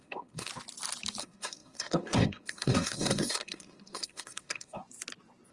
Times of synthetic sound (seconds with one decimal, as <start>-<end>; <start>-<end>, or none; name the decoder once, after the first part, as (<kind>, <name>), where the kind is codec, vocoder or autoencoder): 0.0-0.5 (codec, SNAC); 1.2-4.8